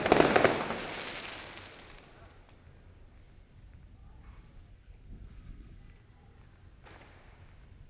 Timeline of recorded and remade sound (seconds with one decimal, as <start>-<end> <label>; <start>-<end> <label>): 0.0-4.7 recorded; 4.7-5.8 remade; 5.8-7.9 recorded